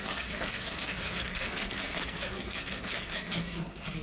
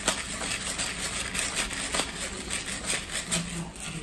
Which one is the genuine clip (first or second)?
second